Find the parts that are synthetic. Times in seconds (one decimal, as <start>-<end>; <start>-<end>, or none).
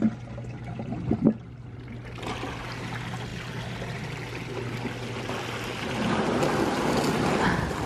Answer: none